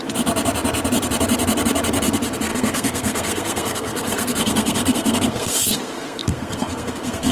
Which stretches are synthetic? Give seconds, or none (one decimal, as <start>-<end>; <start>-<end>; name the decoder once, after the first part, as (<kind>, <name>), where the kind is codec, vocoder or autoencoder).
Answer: 2.5-7.3 (codec, SNAC)